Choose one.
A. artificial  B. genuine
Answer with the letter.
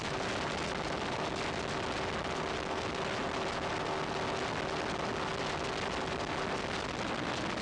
B